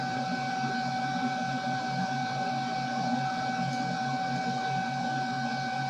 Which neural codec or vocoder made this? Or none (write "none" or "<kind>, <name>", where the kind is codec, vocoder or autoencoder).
none